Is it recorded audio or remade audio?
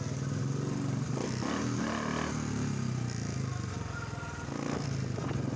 recorded